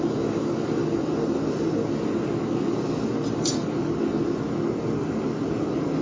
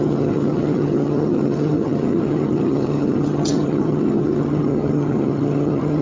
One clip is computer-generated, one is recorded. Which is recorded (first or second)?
first